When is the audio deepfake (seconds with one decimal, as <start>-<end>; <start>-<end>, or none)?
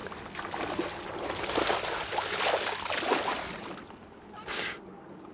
none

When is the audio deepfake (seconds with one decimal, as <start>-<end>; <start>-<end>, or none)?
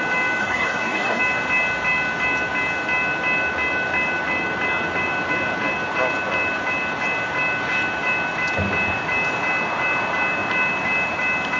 0.4-1.2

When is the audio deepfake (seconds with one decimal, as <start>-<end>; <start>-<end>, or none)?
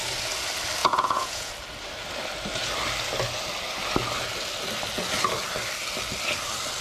0.8-1.5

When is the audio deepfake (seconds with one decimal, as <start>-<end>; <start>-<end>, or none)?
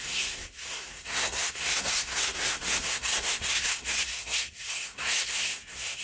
0.0-6.0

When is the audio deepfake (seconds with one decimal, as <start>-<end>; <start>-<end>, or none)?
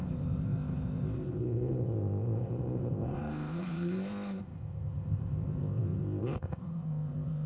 0.0-7.5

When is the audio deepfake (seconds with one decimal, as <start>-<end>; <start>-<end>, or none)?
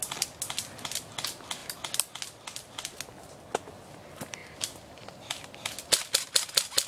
none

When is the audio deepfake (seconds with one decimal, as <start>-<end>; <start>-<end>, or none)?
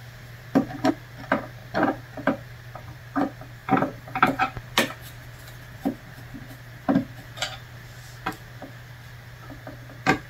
none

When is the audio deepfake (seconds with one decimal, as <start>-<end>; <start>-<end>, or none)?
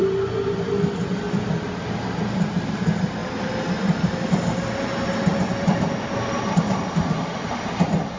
none